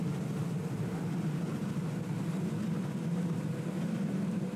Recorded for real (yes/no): yes